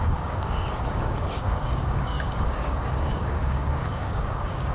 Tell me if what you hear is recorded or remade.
remade